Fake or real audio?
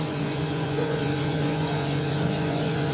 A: fake